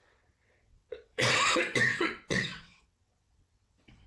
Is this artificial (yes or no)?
yes